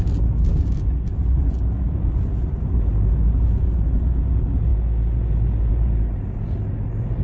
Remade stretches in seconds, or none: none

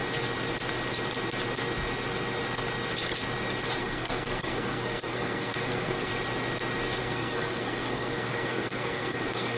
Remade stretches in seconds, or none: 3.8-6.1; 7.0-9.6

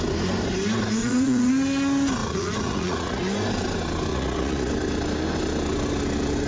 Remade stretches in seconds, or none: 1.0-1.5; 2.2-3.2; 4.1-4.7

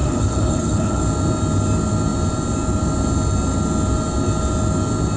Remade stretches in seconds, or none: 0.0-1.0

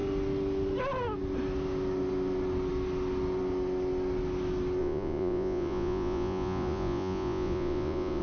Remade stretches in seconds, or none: 4.8-8.2

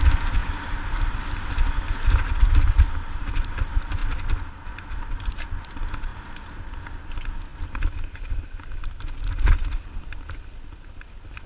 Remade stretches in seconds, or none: none